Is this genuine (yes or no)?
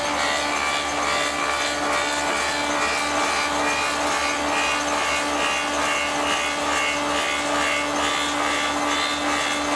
yes